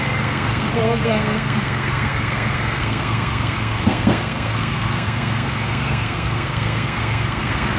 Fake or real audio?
fake